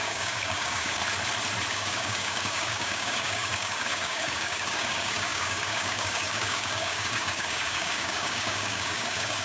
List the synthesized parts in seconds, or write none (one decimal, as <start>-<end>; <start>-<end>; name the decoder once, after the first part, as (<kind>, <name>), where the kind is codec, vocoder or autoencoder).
0.0-1.0 (codec, DAC); 1.7-9.4